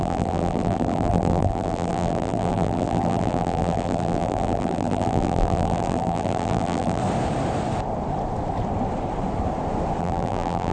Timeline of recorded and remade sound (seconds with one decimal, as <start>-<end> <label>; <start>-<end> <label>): 0.0-7.0 remade; 7.0-10.0 recorded; 10.0-10.7 remade